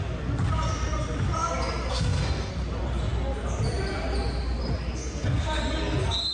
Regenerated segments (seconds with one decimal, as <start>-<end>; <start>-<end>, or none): 1.9-2.5; 5.0-5.6